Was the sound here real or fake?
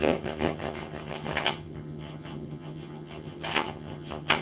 fake